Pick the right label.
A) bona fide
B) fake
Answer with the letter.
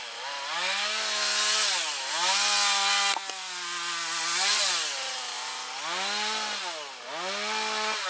A